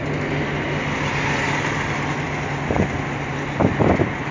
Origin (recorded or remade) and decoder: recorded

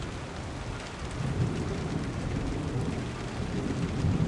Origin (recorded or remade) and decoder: recorded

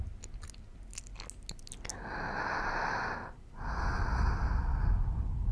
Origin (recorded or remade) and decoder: recorded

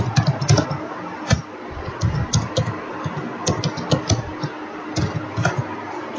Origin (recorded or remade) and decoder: recorded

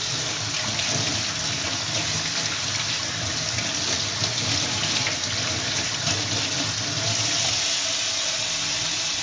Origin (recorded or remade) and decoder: recorded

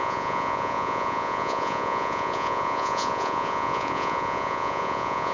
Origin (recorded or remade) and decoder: remade, vocoder, Vocos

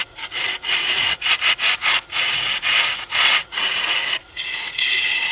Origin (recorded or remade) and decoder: remade, vocoder, Vocos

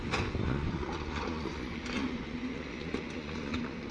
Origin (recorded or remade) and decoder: remade, vocoder, Vocos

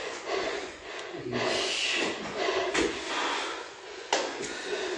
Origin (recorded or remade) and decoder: remade, vocoder, Vocos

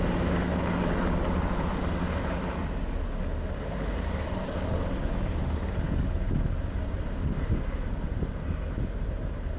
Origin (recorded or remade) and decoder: recorded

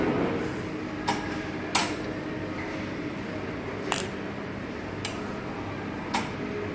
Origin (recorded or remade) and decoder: recorded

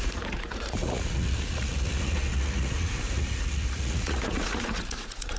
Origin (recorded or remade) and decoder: remade, vocoder, Vocos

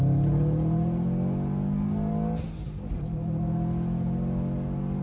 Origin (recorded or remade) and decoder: recorded